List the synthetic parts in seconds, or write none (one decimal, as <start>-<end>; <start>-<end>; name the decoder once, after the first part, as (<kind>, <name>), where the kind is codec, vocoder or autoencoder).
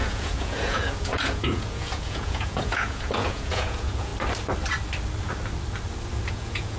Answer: 0.0-4.1 (vocoder, Vocos); 6.3-6.8